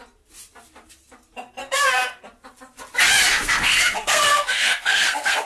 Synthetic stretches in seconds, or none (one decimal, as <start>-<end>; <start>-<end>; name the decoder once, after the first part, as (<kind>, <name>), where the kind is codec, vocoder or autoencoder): 1.6-2.2 (codec, SNAC); 3.3-5.5